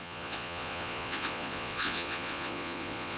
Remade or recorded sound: remade